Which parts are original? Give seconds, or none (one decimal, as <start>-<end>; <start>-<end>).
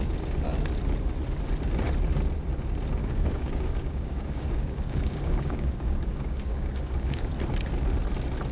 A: 0.0-3.0; 7.3-8.5